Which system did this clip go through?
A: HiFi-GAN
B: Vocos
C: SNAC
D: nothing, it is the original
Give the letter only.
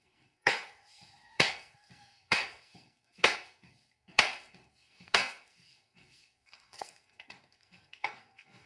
C